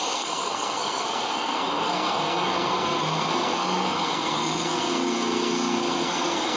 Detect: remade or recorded remade